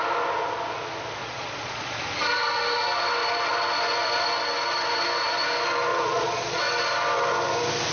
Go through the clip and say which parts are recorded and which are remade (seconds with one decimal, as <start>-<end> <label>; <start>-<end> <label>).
0.0-1.2 recorded; 1.2-2.0 remade; 2.0-5.9 recorded; 5.9-6.6 remade; 6.6-7.9 recorded